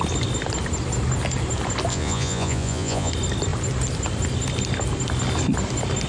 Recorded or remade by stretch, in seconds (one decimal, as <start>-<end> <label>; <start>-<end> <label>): 0.0-1.9 recorded; 1.9-3.1 remade; 3.1-6.1 recorded